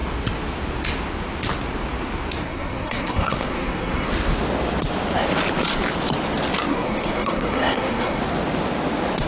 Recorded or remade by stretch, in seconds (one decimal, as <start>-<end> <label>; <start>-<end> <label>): 0.0-2.4 recorded; 2.4-4.1 remade; 4.1-6.7 recorded; 6.7-8.2 remade; 8.2-9.3 recorded